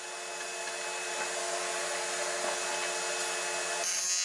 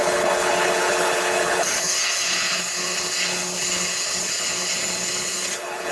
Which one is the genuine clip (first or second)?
first